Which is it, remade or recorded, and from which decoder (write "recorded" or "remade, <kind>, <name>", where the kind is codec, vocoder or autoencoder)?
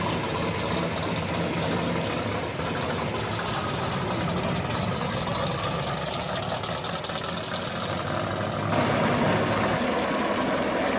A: recorded